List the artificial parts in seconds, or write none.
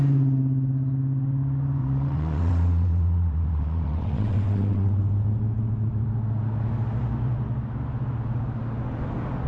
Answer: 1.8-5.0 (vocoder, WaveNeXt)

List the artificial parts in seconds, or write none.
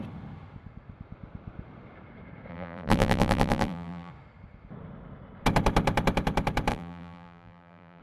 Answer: 2.5-4.1 (vocoder, BigVGAN v2); 6.7-8.0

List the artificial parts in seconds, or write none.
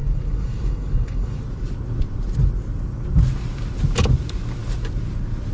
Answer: 0.0-1.4 (codec, DAC)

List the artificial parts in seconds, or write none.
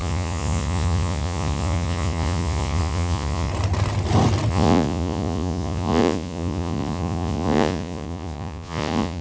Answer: 0.0-3.5 (vocoder, Vocos); 4.5-9.2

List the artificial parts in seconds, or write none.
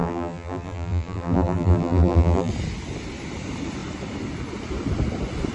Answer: 0.0-2.5 (vocoder, BigVGAN v2)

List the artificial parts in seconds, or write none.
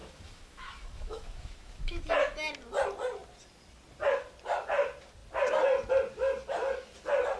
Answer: 0.0-2.1 (autoencoder, DAC-VAE)